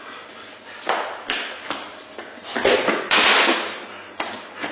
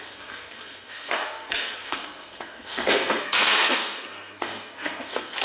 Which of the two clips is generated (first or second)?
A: second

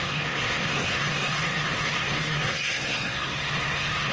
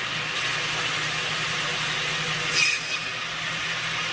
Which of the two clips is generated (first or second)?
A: first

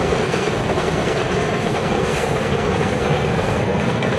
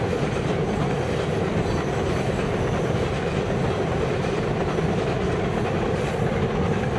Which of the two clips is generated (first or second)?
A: first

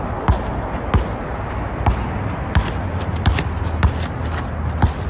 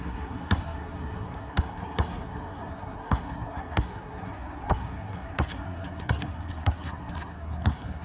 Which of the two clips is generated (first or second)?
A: second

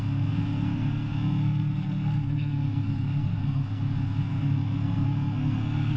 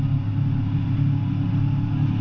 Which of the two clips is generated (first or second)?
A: first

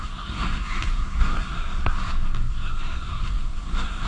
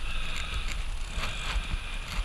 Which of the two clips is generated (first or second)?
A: first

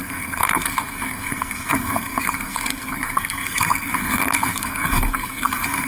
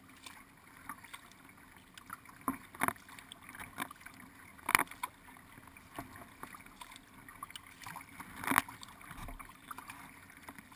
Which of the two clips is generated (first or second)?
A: first